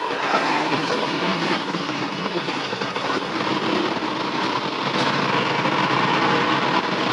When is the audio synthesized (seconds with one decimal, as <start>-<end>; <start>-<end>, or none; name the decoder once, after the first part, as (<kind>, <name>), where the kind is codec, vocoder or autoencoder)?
0.0-3.3 (codec, SNAC)